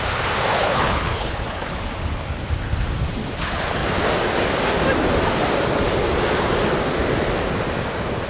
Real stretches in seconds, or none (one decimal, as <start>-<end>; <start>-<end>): 0.0-0.5; 1.7-8.3